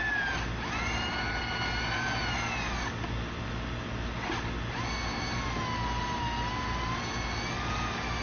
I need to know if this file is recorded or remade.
recorded